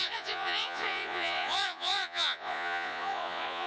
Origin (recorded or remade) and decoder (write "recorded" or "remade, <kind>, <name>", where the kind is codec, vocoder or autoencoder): remade, vocoder, Vocos